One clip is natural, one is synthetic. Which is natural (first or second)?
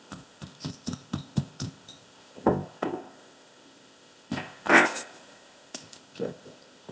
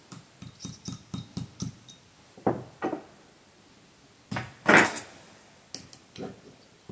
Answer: second